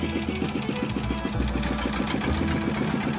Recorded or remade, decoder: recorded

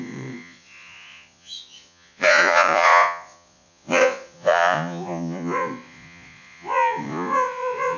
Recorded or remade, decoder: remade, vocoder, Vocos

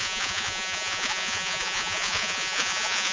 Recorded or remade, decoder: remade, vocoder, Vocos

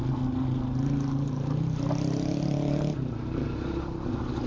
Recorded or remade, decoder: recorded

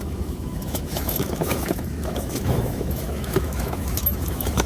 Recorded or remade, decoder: remade, autoencoder, DAC-VAE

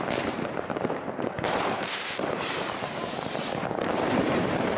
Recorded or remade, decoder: remade, vocoder, BigVGAN v2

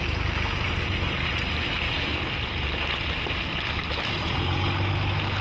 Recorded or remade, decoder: recorded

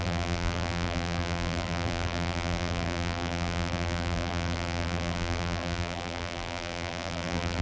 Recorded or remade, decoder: remade, vocoder, BigVGAN v2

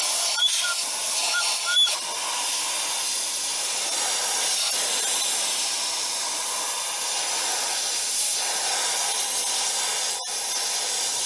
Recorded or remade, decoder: recorded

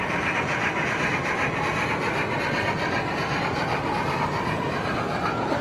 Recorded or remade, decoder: recorded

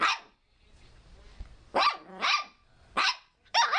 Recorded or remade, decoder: recorded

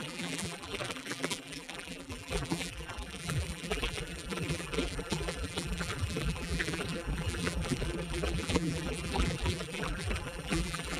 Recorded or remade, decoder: remade, vocoder, BigVGAN v2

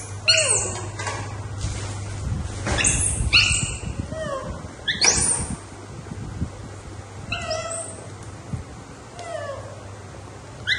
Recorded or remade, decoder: recorded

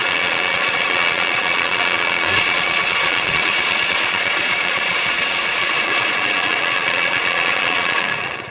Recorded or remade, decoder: remade, vocoder, Vocos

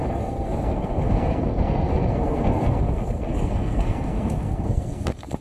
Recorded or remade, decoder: remade, codec, SNAC